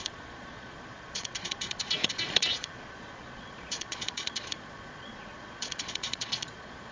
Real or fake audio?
fake